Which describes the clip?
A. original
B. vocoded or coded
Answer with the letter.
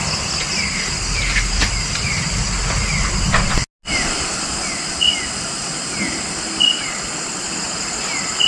A